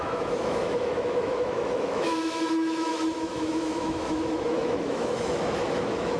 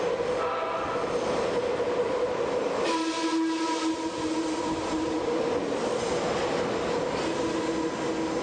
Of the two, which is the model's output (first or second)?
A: first